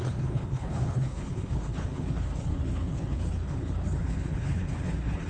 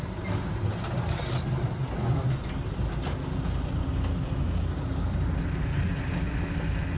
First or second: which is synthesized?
first